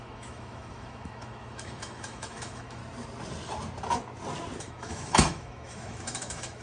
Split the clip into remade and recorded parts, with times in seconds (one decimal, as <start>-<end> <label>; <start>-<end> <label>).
0.0-2.8 remade; 2.8-4.6 recorded; 4.6-6.6 remade